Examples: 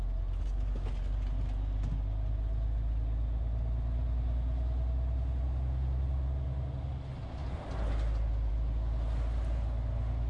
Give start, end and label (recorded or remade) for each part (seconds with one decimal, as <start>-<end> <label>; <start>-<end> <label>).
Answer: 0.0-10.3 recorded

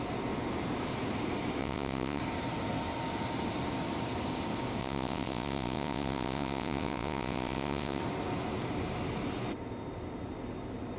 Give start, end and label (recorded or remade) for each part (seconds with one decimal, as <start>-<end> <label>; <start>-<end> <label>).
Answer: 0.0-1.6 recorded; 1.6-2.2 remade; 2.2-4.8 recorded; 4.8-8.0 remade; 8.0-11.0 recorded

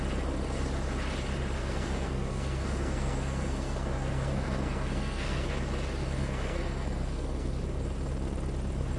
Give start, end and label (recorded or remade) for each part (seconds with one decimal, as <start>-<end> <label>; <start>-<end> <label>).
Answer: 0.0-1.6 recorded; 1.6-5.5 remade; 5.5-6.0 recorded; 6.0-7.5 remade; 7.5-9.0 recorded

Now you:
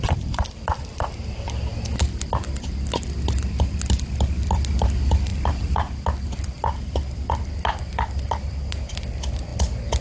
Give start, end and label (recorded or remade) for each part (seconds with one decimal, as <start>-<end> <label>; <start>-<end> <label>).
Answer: 0.0-10.0 recorded